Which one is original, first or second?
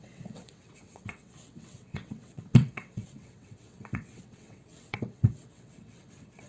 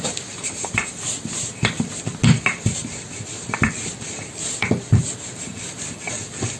second